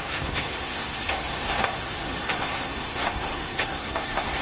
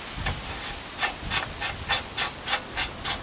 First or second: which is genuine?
second